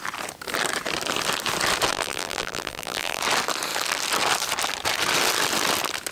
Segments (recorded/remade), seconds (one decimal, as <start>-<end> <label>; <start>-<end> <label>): 0.0-1.9 recorded; 1.9-3.2 remade; 3.2-6.1 recorded